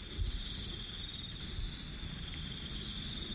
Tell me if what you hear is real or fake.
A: real